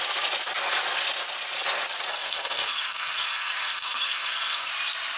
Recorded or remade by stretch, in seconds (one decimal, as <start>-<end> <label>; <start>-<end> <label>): 0.0-2.1 recorded; 2.1-4.7 remade; 4.7-5.2 recorded